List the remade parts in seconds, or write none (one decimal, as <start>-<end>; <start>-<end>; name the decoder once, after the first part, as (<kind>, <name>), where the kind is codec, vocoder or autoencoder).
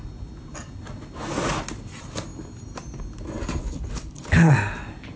3.6-4.5 (codec, HILCodec)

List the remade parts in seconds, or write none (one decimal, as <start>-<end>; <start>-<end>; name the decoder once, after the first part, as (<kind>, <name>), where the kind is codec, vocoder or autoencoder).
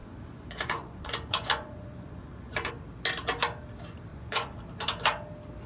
0.0-2.7 (vocoder, Vocos); 4.1-4.6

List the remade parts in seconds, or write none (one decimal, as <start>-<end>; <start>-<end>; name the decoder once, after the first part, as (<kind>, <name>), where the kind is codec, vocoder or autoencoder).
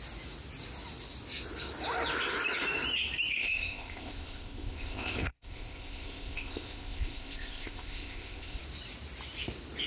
3.4-8.6 (codec, ZipCodec)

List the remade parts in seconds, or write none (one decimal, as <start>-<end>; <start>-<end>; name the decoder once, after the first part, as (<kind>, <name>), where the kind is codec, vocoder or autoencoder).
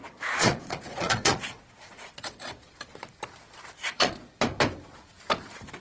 0.0-2.7 (vocoder, Vocos); 3.8-4.3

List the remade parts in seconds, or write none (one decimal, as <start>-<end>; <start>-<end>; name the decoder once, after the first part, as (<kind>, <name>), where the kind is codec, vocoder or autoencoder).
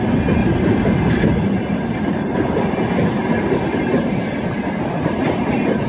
0.4-1.1 (vocoder, BigVGAN v2)